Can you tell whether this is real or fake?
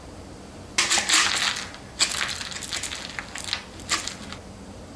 real